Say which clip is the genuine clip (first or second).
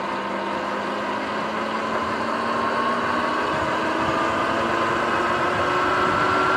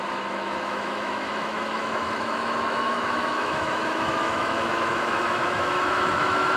first